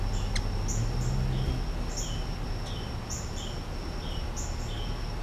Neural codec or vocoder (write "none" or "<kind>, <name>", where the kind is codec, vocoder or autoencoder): none